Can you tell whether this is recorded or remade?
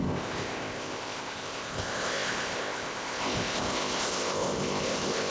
remade